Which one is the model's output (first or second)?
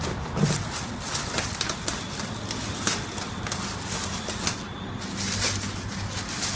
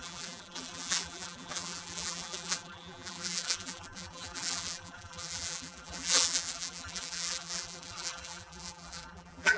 second